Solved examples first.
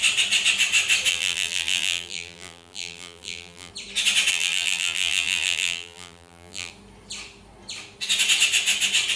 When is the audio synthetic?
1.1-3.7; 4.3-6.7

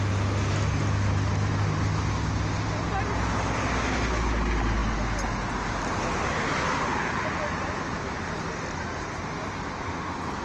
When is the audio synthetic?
none

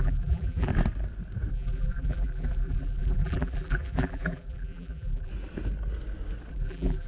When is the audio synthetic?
0.0-0.7; 1.5-5.3; 6.5-7.1